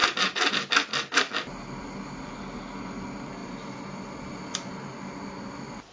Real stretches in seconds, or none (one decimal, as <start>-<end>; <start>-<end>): 0.0-5.9